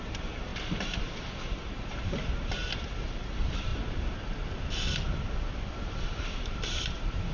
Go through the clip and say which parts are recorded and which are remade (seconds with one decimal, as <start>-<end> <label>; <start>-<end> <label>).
0.0-0.5 remade; 0.5-1.4 recorded; 1.4-2.6 remade; 2.6-3.2 recorded; 3.2-3.7 remade; 3.7-5.7 recorded; 5.7-7.3 remade